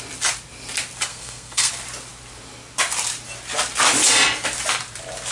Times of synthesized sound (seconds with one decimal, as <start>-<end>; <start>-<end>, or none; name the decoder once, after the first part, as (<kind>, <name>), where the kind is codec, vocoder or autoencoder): 1.1-1.7 (codec, SNAC)